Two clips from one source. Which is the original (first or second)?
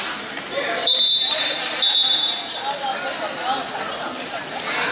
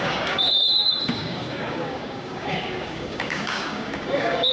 first